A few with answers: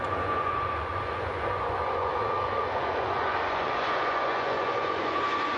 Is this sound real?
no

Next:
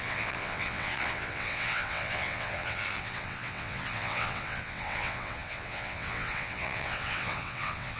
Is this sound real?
no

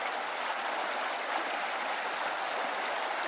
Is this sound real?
yes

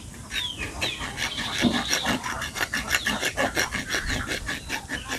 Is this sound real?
yes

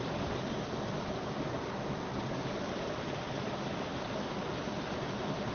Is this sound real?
yes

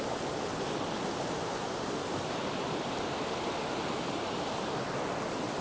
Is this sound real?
yes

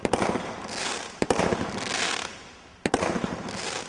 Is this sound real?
yes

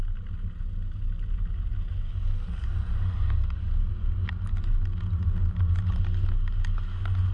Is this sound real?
yes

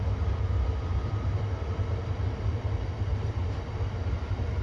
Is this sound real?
yes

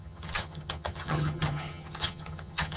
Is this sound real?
no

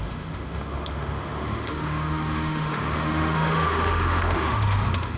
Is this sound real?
no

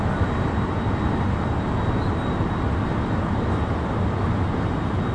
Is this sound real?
yes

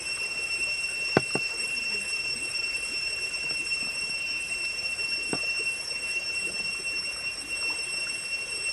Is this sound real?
no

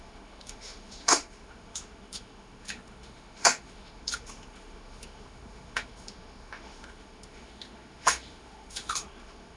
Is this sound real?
no